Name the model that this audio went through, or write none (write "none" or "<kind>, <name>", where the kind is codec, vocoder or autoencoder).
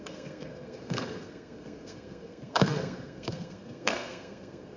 codec, SNAC